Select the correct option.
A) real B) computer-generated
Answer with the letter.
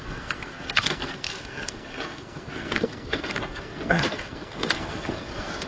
B